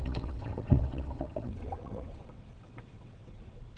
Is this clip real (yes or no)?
no